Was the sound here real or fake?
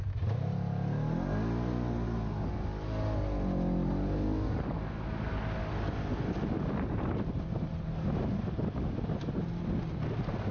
real